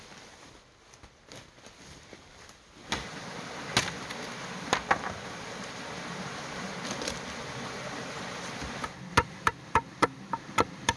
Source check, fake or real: real